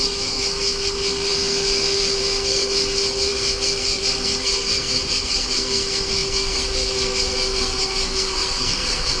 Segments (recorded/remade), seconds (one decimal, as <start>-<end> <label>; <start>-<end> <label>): 0.0-9.2 remade